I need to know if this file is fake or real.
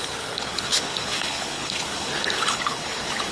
fake